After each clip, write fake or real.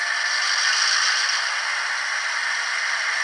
real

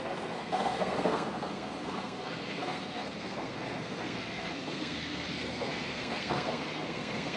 fake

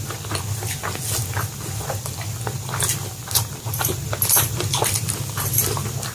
real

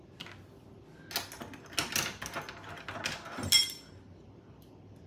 real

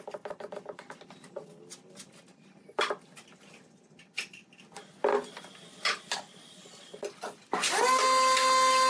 real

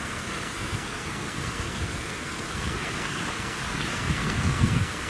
fake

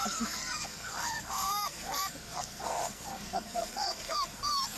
fake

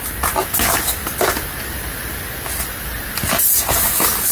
real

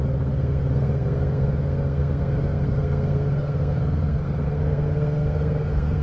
fake